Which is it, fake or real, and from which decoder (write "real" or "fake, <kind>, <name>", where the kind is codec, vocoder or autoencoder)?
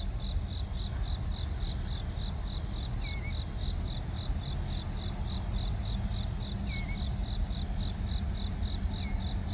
real